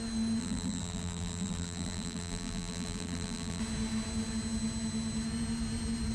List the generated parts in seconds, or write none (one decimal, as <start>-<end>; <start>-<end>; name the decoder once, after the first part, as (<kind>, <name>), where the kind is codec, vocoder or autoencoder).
0.4-3.6 (vocoder, BigVGAN v2)